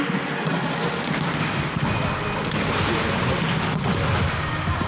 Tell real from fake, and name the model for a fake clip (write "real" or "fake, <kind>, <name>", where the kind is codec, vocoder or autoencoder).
real